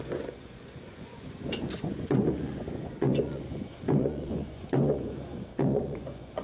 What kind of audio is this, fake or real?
fake